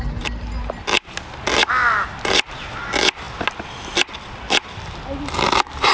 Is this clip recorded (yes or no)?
yes